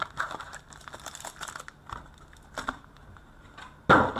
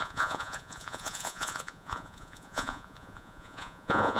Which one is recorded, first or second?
first